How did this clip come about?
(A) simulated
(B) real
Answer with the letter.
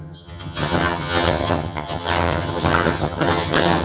A